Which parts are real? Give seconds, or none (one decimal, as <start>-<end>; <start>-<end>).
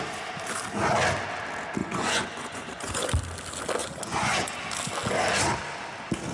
0.0-1.8; 3.0-3.8; 4.6-6.3